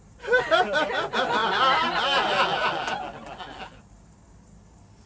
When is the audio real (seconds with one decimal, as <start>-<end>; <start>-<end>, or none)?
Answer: 0.0-5.1